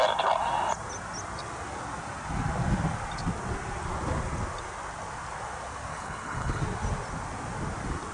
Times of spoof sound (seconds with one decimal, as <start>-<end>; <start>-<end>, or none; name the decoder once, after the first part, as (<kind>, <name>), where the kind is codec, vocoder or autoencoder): 5.9-6.6 (codec, HILCodec)